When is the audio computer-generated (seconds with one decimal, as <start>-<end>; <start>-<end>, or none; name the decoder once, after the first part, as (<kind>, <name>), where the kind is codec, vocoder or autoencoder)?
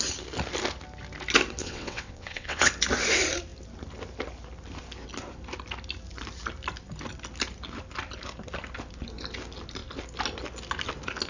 1.6-2.7 (vocoder, WaveNeXt)